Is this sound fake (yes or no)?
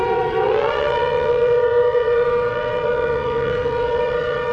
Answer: yes